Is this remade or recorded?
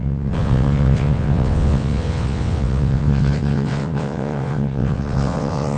remade